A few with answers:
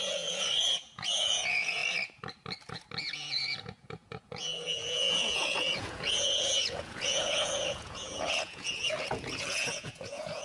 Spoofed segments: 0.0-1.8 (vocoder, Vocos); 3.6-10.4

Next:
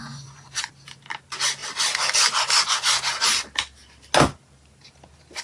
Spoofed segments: 0.0-0.7 (vocoder, Vocos)

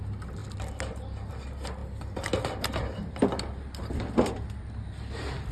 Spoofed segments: none

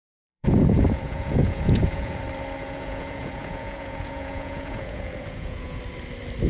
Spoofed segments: 0.0-2.2 (vocoder, Vocos); 2.6-5.8

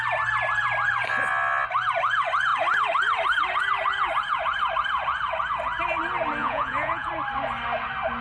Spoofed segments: 6.4-7.1 (vocoder, Vocos)

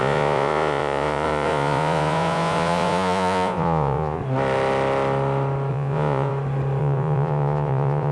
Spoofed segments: 0.0-4.2 (vocoder, Vocos); 5.7-6.3; 6.8-8.1